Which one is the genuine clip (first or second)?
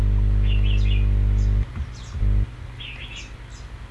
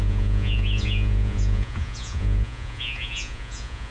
first